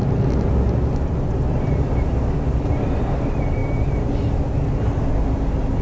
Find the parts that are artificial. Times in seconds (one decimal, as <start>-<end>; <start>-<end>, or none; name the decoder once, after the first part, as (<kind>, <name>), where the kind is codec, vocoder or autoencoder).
none